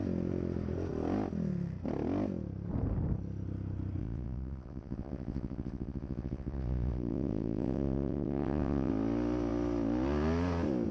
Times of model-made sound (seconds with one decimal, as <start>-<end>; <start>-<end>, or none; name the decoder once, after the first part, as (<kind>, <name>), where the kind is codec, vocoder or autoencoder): 4.0-8.9 (vocoder, WaveNeXt)